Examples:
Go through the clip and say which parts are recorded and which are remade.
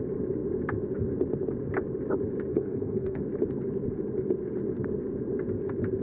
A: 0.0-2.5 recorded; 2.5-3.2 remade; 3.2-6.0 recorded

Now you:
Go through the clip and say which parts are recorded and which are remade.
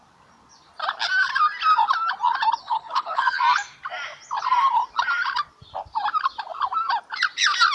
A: 0.0-2.6 recorded; 2.6-3.4 remade; 3.4-7.7 recorded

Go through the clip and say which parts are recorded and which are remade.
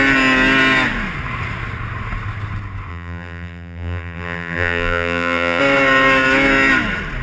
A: 0.0-2.9 recorded; 2.9-5.6 remade; 5.6-7.2 recorded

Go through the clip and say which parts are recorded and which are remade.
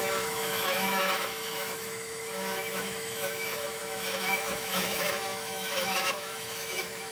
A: 0.0-7.1 remade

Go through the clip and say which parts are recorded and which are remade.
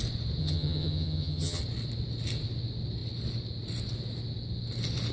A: 0.0-0.4 recorded; 0.4-1.6 remade; 1.6-5.1 recorded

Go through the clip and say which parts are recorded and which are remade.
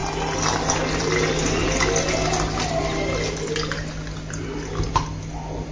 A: 0.0-5.7 recorded